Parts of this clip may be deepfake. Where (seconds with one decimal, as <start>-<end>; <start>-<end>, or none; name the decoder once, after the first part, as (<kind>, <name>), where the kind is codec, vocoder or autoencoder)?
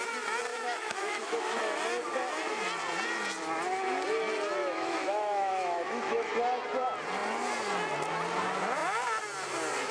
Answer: 0.5-1.6 (autoencoder, DAC-VAE); 4.6-6.3